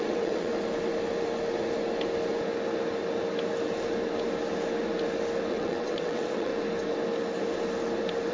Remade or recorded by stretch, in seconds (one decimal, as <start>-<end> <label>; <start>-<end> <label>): 0.0-0.5 remade; 0.5-5.5 recorded; 5.5-6.5 remade; 6.5-8.3 recorded